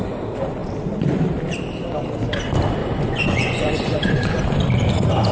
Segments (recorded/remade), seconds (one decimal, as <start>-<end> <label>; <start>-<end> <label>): 0.0-2.8 recorded; 2.8-4.4 remade; 4.4-5.3 recorded